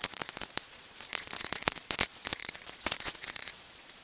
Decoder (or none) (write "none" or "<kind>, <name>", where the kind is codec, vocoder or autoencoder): vocoder, Vocos